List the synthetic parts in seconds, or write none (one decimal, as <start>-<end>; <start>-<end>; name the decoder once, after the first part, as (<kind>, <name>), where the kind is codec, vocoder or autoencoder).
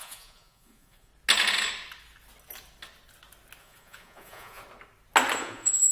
0.0-1.1 (vocoder, Vocos); 3.6-4.6; 5.4-5.9